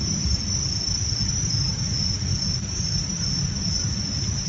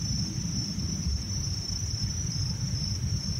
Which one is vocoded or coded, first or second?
second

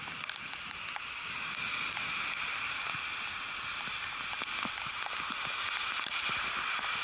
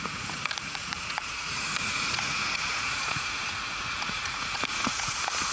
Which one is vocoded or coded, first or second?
second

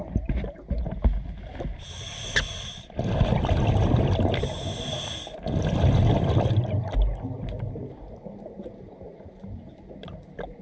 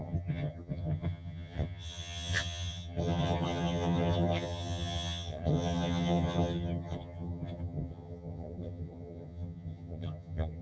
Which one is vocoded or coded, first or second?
second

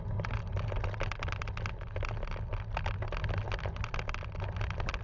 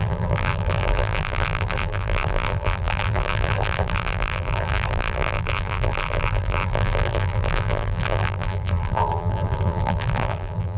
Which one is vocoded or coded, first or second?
second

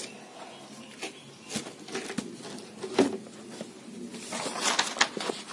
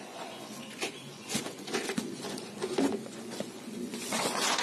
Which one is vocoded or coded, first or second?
second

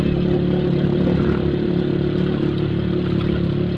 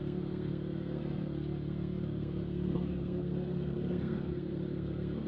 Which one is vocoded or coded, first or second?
second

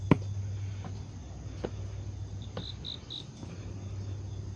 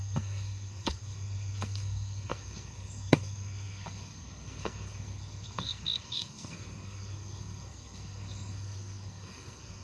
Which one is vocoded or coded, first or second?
second